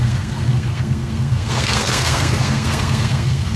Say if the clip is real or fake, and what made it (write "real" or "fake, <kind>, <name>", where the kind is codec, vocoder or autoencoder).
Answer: fake, codec, SNAC